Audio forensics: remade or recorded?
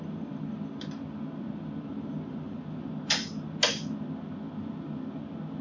recorded